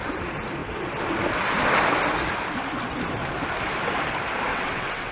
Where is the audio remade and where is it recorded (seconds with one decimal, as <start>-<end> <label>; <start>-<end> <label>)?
0.0-4.5 recorded; 4.5-5.1 remade